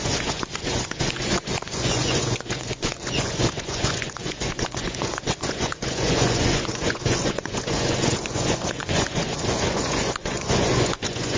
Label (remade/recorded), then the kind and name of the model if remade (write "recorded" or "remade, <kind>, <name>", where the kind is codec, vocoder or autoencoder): remade, vocoder, Vocos